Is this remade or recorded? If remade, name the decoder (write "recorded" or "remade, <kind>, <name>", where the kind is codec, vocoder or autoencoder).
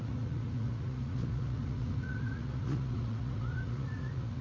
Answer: remade, vocoder, Vocos